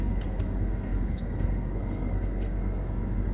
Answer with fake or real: fake